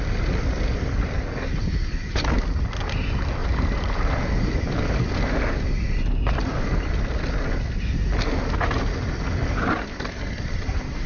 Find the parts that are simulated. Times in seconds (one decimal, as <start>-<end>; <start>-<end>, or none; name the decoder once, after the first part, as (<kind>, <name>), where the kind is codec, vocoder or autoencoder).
3.4-4.3 (vocoder, BigVGAN v2)